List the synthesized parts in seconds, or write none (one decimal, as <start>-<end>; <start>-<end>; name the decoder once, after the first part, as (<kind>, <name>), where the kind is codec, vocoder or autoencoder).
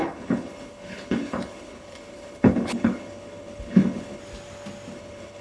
0.0-4.2 (codec, HILCodec); 4.9-5.4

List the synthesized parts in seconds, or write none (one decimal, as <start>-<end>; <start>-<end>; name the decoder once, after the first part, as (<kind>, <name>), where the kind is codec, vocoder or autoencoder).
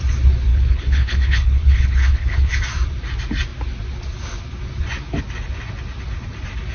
0.5-2.6 (codec, HILCodec)